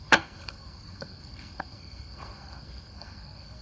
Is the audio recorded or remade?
remade